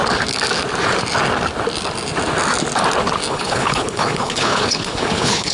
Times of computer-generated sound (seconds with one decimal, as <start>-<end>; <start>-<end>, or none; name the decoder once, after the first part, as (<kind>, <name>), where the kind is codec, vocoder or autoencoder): 3.3-5.5 (codec, HILCodec)